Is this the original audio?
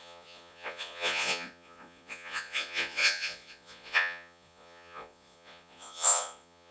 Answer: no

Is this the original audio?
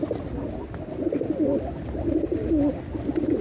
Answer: yes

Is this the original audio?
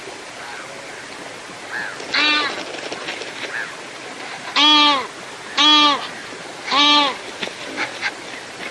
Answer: yes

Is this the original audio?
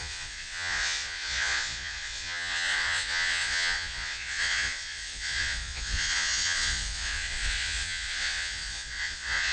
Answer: no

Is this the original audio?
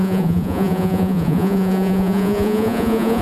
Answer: no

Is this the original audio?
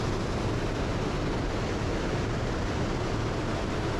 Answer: yes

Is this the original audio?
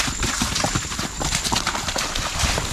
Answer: yes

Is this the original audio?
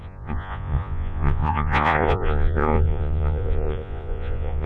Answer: no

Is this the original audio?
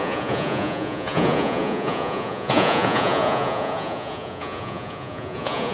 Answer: no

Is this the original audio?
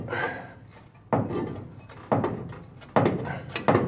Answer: yes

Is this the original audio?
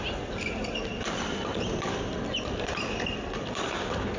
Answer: yes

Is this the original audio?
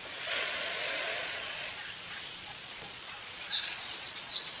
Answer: no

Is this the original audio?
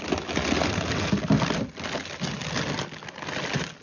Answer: yes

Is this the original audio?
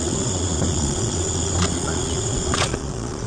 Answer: no